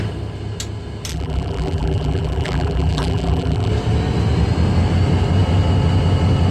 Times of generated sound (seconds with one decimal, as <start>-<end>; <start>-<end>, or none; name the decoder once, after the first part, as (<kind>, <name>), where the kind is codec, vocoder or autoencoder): 1.1-3.7 (vocoder, BigVGAN v2)